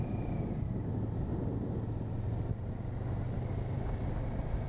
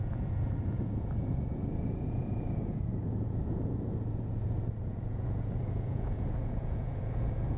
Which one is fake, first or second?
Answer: second